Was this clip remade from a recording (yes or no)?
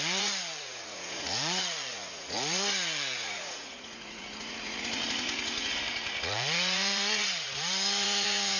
yes